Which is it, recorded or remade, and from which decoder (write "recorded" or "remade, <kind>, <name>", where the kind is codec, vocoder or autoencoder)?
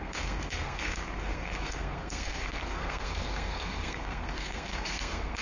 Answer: remade, codec, SNAC